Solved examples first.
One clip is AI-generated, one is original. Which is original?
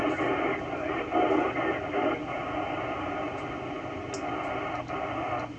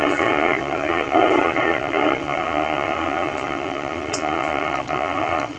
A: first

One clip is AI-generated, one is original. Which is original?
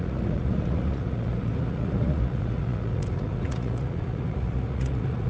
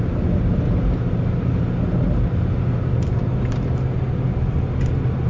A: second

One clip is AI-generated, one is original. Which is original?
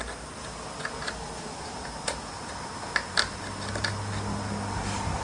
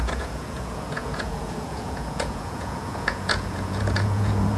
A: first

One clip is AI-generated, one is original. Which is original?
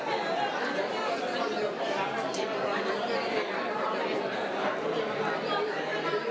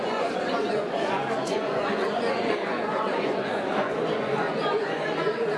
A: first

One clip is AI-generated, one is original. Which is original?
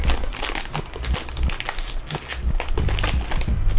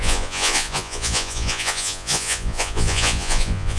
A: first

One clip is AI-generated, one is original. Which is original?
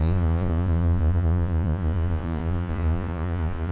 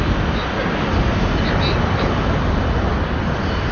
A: second